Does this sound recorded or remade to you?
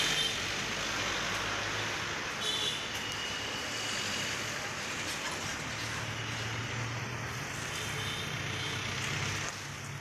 recorded